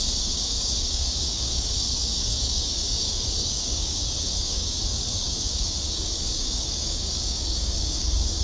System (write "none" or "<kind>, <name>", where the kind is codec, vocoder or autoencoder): codec, DAC